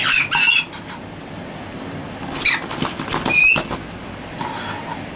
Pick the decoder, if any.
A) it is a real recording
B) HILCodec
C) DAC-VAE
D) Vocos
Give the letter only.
A